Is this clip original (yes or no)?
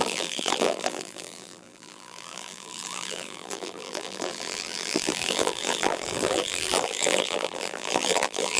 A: no